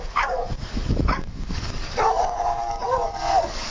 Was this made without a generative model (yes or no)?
no